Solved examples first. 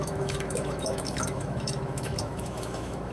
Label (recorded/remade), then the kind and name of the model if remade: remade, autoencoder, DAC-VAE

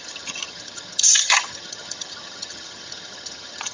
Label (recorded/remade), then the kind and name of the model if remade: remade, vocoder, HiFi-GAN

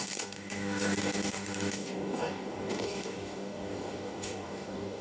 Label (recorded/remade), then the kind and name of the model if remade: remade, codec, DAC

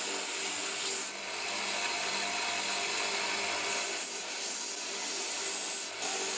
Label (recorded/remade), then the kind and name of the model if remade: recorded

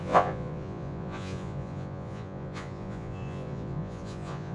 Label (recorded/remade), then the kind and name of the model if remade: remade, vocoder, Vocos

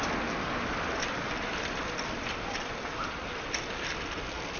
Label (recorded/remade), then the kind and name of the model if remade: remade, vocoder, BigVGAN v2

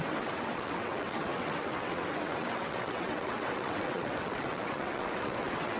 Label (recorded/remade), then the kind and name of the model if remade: remade, vocoder, WaveNeXt